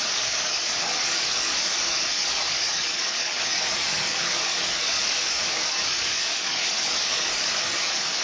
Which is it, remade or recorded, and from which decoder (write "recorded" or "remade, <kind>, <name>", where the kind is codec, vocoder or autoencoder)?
remade, codec, DAC